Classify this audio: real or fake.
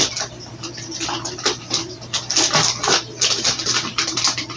real